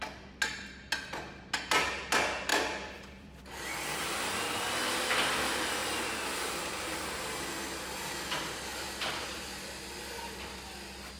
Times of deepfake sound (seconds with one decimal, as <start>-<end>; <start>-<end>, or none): 2.5-3.4